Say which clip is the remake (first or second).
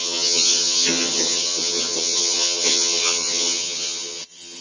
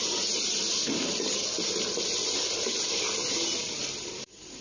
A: first